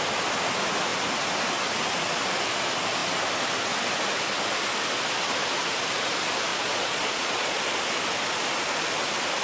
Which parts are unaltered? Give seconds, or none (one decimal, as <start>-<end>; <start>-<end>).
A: 0.0-6.5; 7.6-9.4